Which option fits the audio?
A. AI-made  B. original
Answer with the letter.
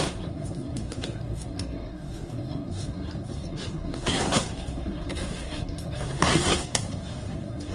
A